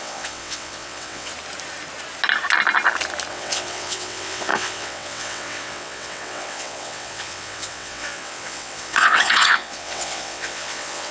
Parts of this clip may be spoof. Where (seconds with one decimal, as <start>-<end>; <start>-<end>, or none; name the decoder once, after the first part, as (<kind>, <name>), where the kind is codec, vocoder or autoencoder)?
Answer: 0.0-1.3 (vocoder, WaveNeXt); 3.3-11.1